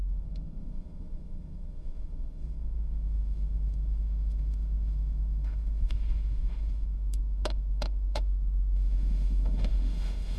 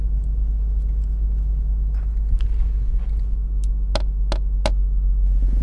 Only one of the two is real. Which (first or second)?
second